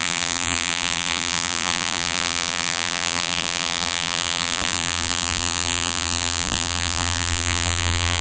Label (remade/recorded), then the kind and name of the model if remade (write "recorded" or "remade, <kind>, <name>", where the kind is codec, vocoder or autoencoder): remade, vocoder, BigVGAN v2